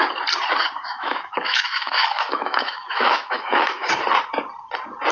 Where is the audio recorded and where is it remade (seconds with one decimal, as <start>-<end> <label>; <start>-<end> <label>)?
0.0-0.8 recorded; 0.8-3.9 remade; 3.9-5.1 recorded